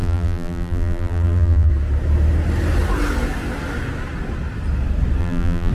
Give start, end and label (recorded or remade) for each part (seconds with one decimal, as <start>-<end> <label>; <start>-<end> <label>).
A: 0.0-1.7 remade; 1.7-5.2 recorded; 5.2-5.7 remade